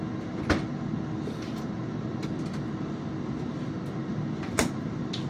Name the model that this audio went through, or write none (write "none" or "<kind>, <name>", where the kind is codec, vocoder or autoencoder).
none